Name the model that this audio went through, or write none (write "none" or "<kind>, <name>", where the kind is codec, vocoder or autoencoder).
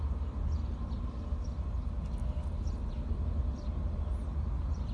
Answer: none